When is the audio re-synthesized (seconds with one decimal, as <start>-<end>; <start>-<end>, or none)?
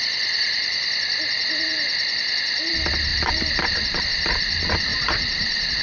3.1-4.0; 4.9-5.8